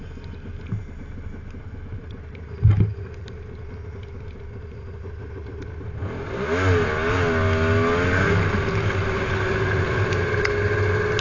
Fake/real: real